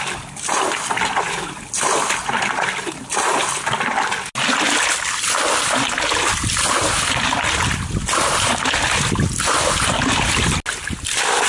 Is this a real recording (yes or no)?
yes